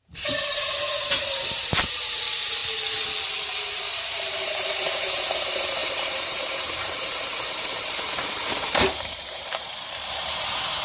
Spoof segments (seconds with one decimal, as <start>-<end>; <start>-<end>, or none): 0.0-2.6; 3.4-10.8